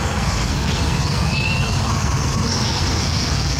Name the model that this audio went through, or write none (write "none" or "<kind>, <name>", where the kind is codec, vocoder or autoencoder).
codec, SNAC